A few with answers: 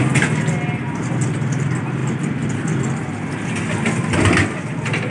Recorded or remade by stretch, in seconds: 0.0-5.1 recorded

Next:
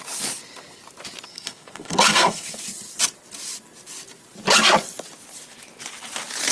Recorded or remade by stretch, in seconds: 0.0-1.3 recorded; 1.3-2.6 remade; 2.6-6.5 recorded

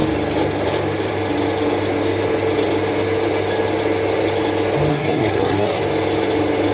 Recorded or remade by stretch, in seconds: 0.0-4.9 recorded; 4.9-5.8 remade; 5.8-6.7 recorded

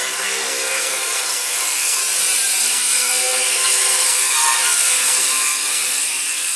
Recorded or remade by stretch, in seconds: 0.0-2.0 remade; 2.0-2.6 recorded; 2.6-6.6 remade

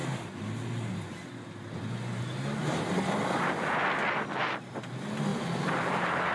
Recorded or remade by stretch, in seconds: 0.0-6.3 recorded

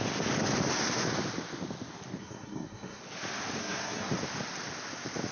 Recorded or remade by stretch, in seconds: 0.0-2.2 recorded; 2.2-3.0 remade; 3.0-3.6 recorded; 3.6-4.1 remade; 4.1-5.3 recorded

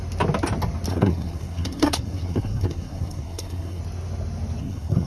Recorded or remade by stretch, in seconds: 0.0-0.9 recorded; 0.9-3.8 remade; 3.8-4.6 recorded; 4.6-5.1 remade

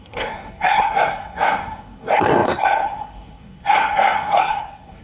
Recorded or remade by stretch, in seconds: 0.0-5.0 remade